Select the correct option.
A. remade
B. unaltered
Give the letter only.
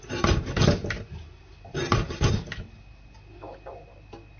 B